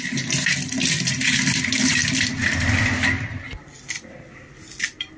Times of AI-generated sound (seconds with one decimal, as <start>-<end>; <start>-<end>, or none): none

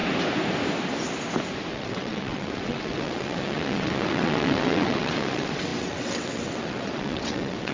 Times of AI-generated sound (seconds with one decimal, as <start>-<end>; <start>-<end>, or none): 1.7-7.7

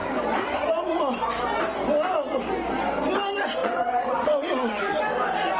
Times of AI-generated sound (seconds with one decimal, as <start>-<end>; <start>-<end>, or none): 3.6-4.8

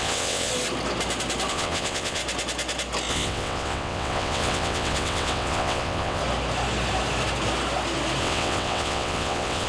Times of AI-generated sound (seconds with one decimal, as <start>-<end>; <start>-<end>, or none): 0.0-0.5; 1.5-2.2; 3.1-6.2; 8.2-9.7

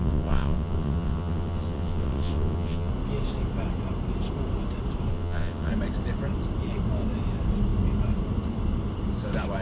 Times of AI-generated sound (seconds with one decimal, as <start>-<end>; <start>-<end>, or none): 0.0-2.9; 5.1-5.7

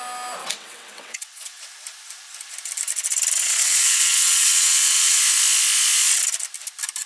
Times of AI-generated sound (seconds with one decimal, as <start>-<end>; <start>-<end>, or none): 0.4-1.6; 3.4-5.2

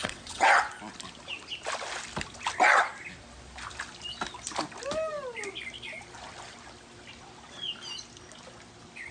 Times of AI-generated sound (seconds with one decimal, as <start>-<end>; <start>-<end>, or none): 0.0-0.5